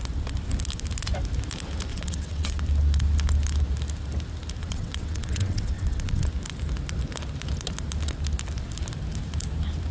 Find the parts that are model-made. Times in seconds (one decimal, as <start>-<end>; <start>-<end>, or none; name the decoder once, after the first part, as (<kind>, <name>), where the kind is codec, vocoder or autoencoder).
1.9-2.6 (vocoder, WaveNeXt); 4.6-6.2